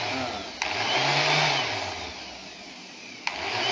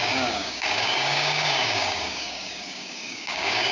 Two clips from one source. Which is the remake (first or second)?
second